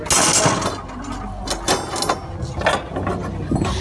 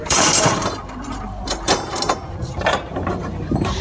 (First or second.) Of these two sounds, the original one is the first